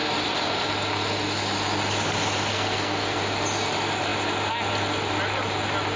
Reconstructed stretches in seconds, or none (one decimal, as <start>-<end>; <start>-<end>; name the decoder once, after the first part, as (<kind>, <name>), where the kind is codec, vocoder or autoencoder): 2.5-3.2 (codec, SNAC)